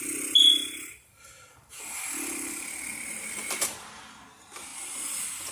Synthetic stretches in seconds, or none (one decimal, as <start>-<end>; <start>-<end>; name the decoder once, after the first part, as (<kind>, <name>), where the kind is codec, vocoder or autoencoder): 2.9-4.1 (vocoder, BigVGAN v2)